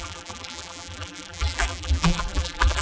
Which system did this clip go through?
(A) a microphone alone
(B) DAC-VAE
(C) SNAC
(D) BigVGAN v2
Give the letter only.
D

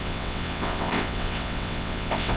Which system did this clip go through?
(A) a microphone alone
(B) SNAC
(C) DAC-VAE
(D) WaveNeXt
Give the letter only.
D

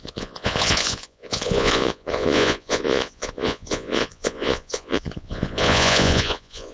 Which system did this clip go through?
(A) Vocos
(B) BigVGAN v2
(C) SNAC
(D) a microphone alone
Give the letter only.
A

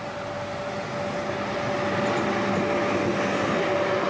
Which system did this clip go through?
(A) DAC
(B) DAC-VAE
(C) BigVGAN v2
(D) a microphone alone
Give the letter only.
D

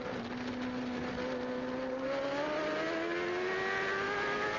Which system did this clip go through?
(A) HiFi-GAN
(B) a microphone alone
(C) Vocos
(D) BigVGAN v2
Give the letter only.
B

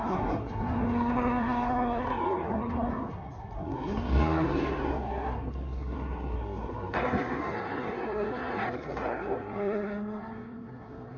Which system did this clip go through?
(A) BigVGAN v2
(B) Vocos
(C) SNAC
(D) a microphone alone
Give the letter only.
C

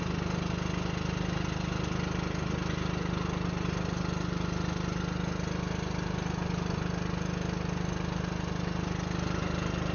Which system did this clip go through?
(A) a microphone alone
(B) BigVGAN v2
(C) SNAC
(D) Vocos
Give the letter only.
A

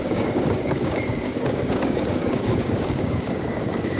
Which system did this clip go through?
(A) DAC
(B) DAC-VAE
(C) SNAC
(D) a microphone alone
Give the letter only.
A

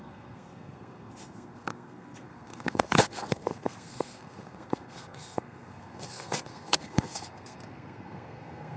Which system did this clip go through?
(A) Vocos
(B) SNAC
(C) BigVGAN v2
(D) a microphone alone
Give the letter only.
B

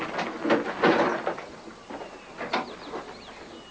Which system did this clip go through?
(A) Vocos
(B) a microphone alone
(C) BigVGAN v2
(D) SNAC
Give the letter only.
B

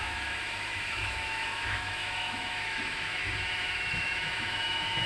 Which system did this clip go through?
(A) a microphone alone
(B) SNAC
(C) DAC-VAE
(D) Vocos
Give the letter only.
C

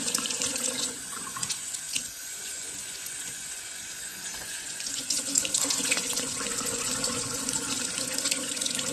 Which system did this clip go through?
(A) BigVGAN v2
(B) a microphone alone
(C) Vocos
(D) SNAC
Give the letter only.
C